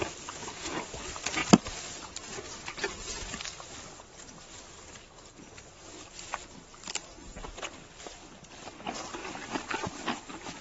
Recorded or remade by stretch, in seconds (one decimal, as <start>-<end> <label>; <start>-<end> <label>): 0.0-1.4 recorded; 1.4-5.3 remade; 5.3-9.2 recorded; 9.2-9.7 remade; 9.7-10.6 recorded